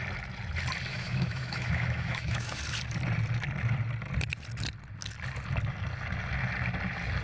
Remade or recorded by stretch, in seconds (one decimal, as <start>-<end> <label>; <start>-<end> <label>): 0.0-0.9 recorded; 0.9-2.6 remade; 2.6-7.2 recorded